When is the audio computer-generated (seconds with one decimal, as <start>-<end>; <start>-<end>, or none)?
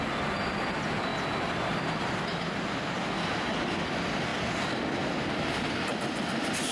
none